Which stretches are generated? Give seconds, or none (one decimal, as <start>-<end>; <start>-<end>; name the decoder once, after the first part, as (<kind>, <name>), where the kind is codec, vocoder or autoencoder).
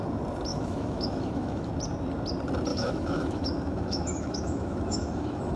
0.5-1.7 (autoencoder, DAC-VAE); 2.7-5.6